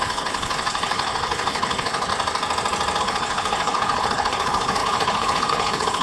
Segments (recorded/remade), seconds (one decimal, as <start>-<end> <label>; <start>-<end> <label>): 0.0-2.1 remade; 2.1-3.0 recorded; 3.0-6.0 remade